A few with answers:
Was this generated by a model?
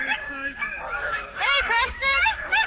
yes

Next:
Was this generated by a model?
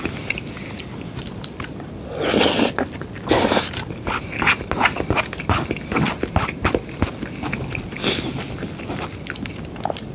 no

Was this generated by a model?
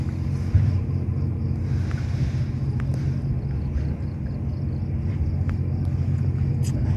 no